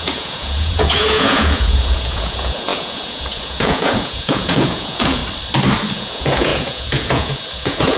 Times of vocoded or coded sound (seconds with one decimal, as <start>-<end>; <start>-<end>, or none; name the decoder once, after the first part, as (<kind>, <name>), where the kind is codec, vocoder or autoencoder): 0.0-5.2 (vocoder, Vocos); 5.9-8.0